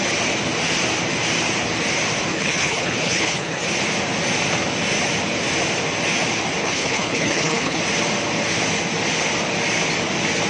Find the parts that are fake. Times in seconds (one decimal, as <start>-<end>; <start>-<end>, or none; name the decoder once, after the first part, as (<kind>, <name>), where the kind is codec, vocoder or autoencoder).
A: 2.3-3.6 (codec, HILCodec); 6.6-7.8